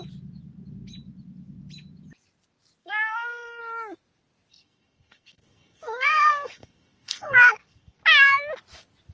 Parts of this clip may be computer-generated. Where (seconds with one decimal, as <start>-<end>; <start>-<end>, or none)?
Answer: 2.8-3.6; 4.5-8.0